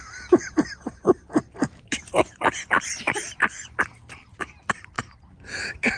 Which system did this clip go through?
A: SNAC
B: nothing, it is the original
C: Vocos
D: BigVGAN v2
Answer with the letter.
B